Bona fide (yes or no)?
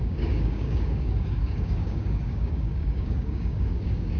no